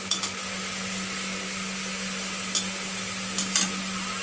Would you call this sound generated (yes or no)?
no